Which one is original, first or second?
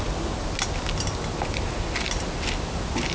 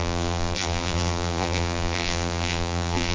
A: first